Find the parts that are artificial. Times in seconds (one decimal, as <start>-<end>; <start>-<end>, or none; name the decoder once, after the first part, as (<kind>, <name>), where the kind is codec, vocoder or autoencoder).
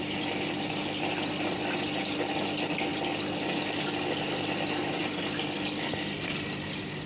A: none